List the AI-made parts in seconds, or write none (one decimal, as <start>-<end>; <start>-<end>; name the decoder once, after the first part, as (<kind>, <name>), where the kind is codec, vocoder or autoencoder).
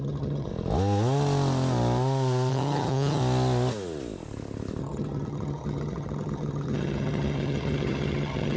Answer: 0.0-0.5 (vocoder, HiFi-GAN); 2.5-3.2; 4.8-8.6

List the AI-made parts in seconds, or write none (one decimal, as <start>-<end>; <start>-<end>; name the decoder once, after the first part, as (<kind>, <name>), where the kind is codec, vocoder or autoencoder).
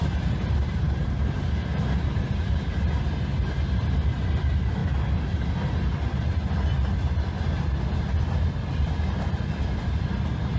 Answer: 0.0-2.2 (vocoder, BigVGAN v2)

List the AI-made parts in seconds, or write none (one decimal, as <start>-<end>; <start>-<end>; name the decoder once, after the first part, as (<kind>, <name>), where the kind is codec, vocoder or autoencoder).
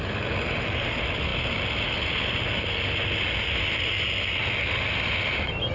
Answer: none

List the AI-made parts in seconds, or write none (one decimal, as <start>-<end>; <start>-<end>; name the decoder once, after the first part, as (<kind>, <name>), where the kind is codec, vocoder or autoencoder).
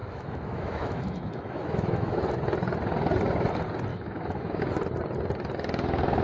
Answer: 0.0-2.2 (autoencoder, DAC-VAE); 3.9-4.6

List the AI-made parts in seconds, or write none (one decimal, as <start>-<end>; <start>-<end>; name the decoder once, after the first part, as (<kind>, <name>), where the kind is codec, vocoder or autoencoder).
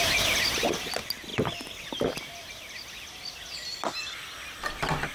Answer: none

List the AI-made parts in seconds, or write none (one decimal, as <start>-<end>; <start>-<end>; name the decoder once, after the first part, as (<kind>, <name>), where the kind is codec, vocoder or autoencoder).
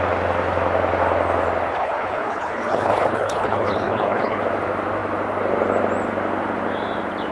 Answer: 1.7-4.4 (codec, HILCodec)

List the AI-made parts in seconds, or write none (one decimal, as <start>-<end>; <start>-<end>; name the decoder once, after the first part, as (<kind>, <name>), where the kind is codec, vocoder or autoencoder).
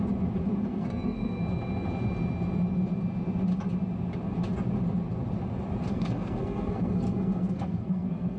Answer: 0.7-1.4 (codec, SNAC); 5.9-8.4